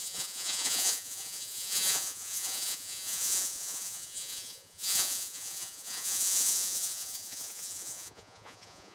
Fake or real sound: fake